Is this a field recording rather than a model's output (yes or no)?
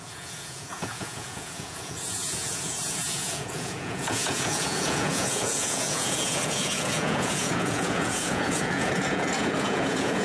no